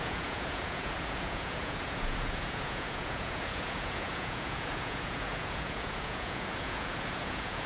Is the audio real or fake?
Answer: fake